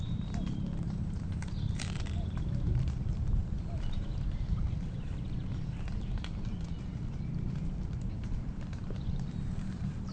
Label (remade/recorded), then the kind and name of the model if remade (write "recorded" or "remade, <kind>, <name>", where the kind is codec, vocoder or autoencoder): remade, vocoder, BigVGAN v2